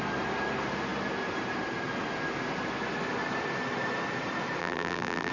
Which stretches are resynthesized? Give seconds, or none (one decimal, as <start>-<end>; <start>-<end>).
4.6-5.3

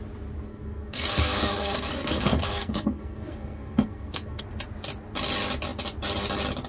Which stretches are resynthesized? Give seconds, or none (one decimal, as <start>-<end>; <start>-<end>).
0.5-4.4

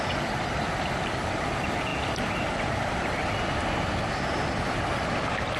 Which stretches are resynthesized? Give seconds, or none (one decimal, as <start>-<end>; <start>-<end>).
none